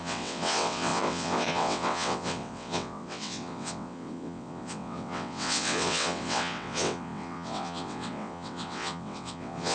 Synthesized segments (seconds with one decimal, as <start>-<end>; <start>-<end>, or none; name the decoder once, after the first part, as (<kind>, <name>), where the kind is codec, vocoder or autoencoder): 0.0-9.7 (vocoder, WaveNeXt)